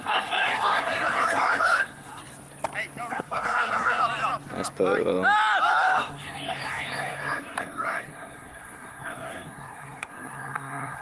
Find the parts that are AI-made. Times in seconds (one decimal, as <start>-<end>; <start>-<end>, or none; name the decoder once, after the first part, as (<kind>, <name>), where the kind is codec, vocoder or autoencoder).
0.0-2.2 (codec, SNAC); 3.1-4.0; 5.7-11.0